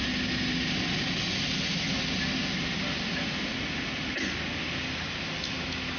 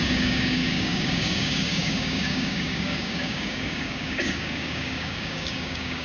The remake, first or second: second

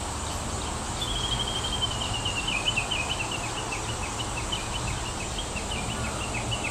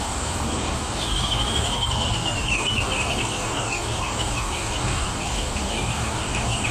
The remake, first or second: second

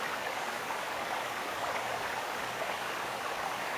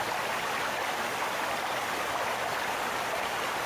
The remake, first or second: first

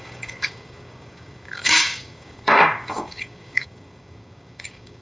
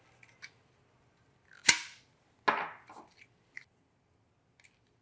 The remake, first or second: first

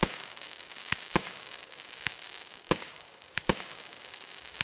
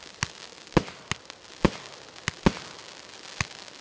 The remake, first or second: first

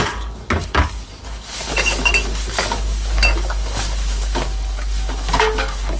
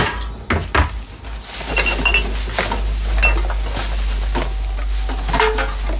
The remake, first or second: first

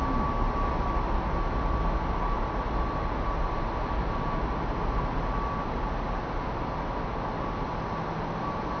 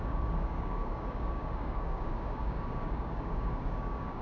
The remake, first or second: second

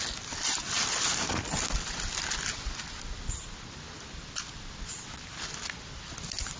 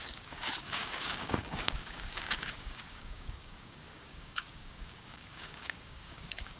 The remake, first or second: second